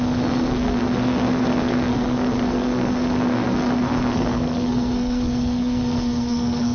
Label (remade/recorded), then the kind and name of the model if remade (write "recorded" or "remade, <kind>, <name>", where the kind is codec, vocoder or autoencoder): remade, codec, SNAC